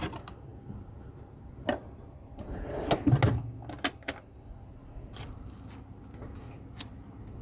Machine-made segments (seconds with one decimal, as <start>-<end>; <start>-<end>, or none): none

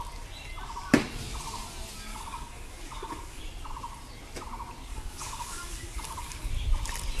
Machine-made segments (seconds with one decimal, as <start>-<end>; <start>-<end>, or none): 2.1-3.4; 4.9-6.5

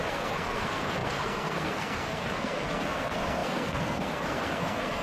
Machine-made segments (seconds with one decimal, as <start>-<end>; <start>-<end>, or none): 0.0-5.0

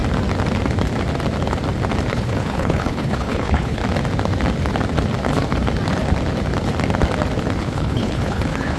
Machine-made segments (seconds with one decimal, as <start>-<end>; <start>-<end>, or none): 2.1-3.8; 7.6-8.8

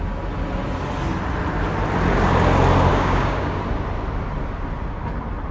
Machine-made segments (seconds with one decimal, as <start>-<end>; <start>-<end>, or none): 2.9-3.6